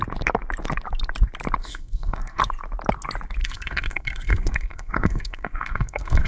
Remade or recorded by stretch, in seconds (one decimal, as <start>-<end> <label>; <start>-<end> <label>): 0.0-1.6 recorded; 1.6-2.4 remade; 2.4-3.4 recorded; 3.4-6.3 remade